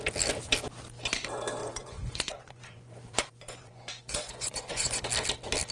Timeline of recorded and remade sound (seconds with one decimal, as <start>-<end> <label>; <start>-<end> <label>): 0.0-1.6 recorded; 1.6-5.0 remade; 5.0-5.7 recorded